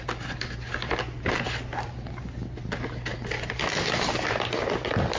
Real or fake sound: real